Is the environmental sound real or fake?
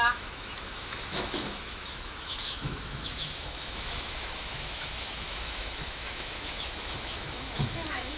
fake